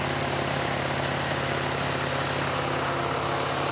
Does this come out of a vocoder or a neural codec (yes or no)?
no